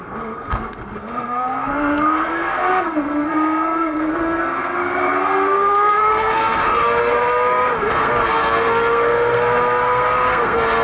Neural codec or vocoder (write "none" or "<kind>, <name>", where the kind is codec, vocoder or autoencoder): codec, SNAC